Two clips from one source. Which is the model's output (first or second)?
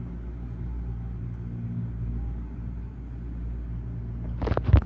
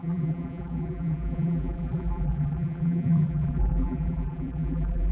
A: second